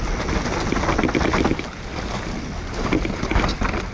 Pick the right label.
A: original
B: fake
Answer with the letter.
A